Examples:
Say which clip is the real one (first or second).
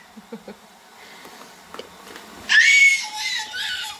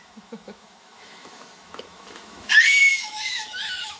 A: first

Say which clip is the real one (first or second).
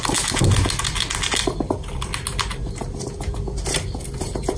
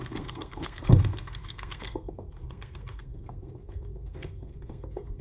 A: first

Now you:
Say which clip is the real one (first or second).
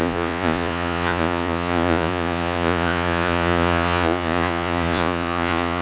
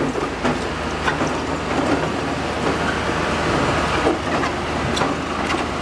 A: second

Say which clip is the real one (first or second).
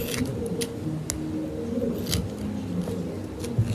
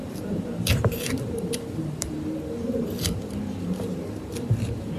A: first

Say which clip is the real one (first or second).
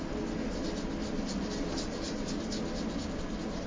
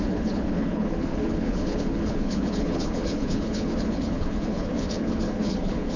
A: first